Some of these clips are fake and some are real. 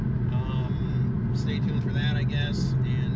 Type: real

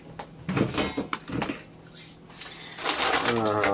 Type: real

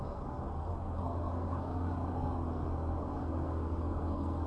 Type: fake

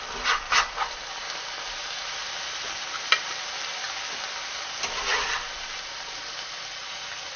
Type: real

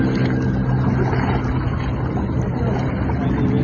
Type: real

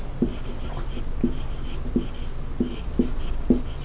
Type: real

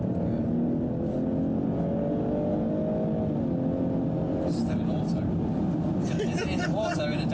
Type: real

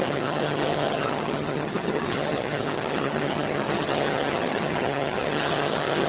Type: fake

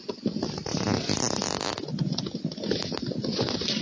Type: real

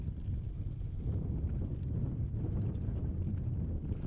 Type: real